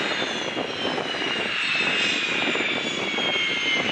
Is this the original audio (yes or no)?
yes